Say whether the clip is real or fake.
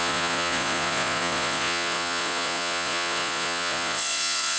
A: fake